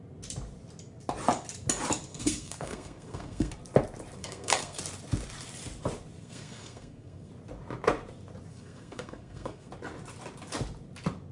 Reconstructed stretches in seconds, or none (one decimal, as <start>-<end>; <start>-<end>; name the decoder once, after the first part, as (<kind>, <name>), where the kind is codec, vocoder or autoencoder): 2.1-3.5 (codec, SNAC); 4.2-4.8; 6.2-7.3; 8.5-9.7